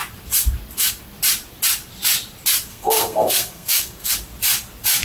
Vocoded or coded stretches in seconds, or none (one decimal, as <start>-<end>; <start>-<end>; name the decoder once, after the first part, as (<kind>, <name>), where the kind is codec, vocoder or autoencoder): 2.7-4.1 (codec, SNAC)